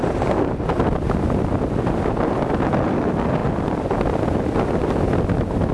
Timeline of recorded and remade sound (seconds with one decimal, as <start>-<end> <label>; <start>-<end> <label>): 0.0-5.7 recorded